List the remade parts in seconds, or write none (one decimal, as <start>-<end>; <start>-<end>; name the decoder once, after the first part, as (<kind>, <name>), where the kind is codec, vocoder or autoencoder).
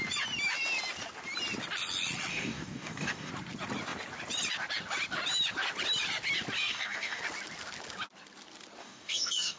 2.3-3.3 (codec, DAC); 6.6-7.2; 8.8-9.6